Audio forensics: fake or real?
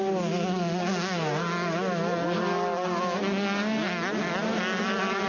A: real